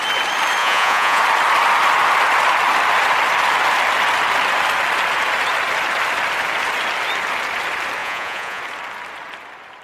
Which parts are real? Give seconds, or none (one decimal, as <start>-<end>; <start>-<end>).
0.0-0.6; 1.2-8.0; 8.6-9.8